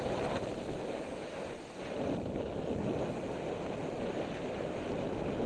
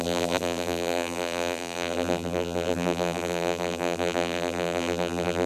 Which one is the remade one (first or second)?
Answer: second